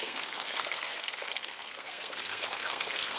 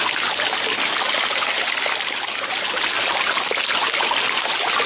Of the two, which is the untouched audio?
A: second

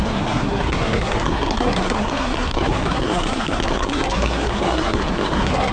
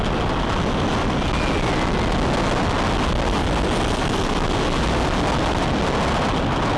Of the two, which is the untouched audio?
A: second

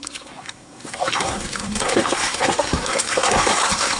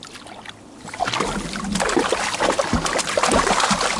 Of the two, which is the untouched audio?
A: second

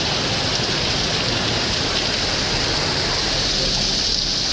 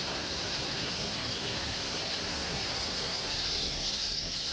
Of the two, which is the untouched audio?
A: first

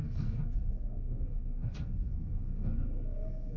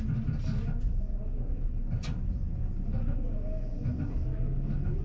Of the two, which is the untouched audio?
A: second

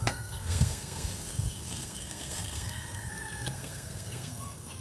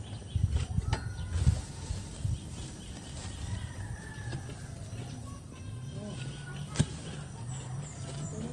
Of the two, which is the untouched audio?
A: second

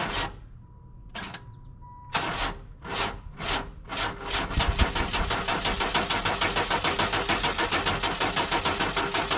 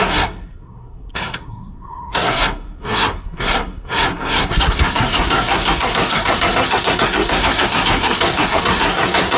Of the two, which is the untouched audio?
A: first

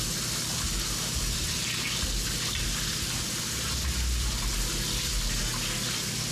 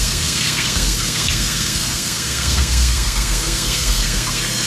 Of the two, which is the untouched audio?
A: first